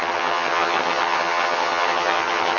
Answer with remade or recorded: remade